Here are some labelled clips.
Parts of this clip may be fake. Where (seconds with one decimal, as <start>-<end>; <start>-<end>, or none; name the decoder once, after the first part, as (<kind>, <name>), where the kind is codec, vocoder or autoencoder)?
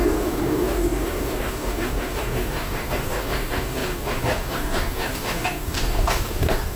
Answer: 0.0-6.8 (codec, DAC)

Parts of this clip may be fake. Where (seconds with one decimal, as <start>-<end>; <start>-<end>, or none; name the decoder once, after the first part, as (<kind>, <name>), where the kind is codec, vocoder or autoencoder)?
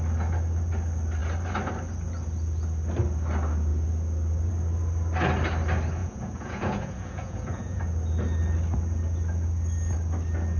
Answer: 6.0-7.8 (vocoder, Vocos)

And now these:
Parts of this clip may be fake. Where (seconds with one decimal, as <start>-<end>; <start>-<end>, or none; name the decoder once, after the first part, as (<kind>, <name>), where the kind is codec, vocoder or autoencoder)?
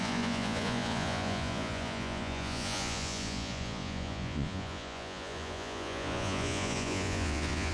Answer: 0.0-7.7 (vocoder, Vocos)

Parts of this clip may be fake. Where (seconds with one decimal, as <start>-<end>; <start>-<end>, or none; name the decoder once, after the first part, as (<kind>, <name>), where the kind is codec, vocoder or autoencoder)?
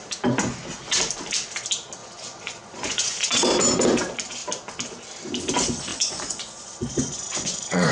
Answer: 2.0-3.4 (vocoder, Vocos); 5.9-7.9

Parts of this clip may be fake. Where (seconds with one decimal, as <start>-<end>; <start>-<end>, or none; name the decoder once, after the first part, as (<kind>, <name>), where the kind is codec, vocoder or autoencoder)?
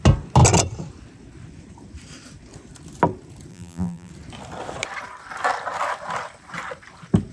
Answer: 3.5-4.1 (vocoder, BigVGAN v2)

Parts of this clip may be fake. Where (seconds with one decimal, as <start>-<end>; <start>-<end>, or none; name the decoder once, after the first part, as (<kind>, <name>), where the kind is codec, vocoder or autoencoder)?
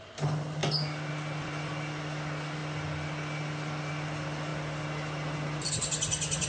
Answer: none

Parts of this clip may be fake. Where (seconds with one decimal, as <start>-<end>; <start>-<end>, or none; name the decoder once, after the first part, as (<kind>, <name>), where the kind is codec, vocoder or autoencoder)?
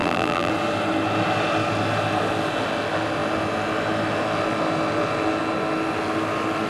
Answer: 0.0-0.5 (vocoder, BigVGAN v2)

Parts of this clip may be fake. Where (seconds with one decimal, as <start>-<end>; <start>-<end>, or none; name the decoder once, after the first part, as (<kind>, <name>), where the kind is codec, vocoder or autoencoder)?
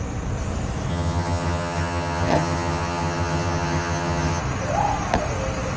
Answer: 0.9-4.4 (vocoder, HiFi-GAN)